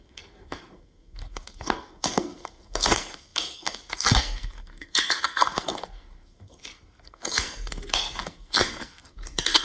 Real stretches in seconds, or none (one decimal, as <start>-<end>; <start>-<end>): none